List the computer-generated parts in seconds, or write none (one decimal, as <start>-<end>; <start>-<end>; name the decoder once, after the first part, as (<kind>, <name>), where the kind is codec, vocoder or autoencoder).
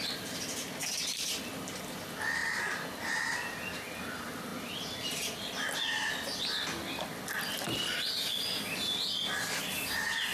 none